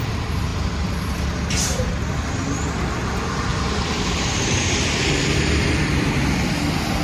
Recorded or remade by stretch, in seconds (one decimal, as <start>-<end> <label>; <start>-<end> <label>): 0.0-3.5 recorded; 3.5-5.8 remade; 5.8-7.0 recorded